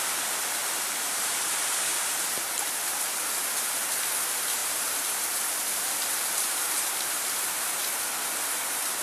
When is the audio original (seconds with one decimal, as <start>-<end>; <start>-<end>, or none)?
0.0-0.6; 3.7-4.6; 7.8-9.0